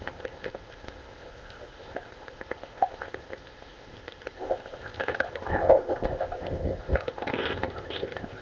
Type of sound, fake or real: fake